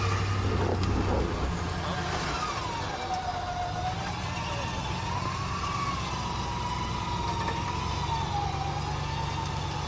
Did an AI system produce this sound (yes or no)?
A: no